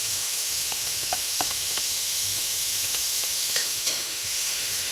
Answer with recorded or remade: remade